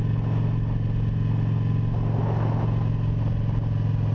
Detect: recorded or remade recorded